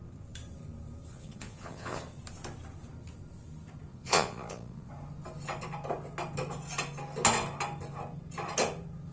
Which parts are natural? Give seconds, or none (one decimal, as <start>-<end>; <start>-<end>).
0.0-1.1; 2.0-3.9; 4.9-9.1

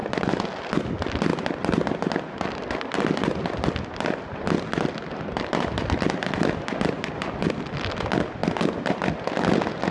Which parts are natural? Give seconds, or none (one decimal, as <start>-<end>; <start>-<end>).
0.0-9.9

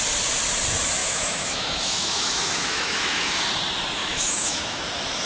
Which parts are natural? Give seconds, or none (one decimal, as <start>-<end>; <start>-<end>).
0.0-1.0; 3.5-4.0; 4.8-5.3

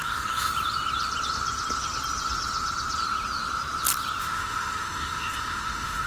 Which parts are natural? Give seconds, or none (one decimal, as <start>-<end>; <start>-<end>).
0.5-4.2

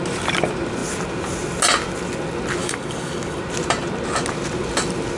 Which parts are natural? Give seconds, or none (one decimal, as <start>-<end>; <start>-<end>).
0.0-2.6; 3.4-5.2

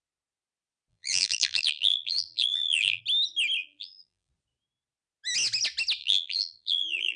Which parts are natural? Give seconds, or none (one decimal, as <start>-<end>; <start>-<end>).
0.0-0.9; 3.0-3.6; 4.3-6.0

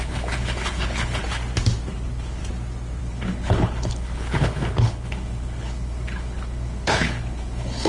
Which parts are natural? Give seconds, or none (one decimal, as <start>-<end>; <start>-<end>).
1.2-1.9; 2.4-3.0

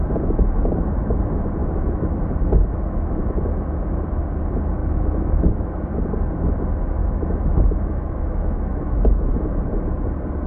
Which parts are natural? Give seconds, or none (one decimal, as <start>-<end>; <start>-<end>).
0.0-1.6; 3.2-4.8; 5.8-7.0; 9.3-10.5